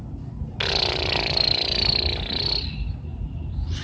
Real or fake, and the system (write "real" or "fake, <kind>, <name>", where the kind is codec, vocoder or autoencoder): real